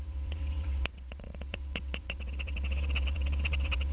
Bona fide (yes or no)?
no